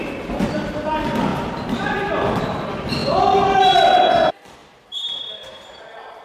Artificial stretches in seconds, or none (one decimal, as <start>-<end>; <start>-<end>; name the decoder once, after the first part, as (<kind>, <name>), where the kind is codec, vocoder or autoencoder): 1.3-2.4 (vocoder, BigVGAN v2)